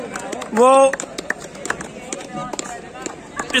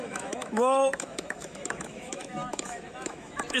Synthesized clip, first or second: second